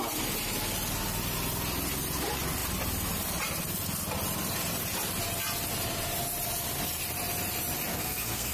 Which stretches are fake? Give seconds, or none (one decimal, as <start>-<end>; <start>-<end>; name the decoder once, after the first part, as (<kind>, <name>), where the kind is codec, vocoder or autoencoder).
7.9-8.5 (codec, SNAC)